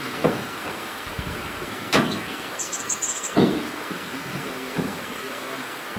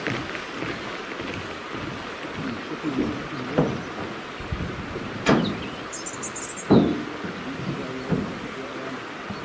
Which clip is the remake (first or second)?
first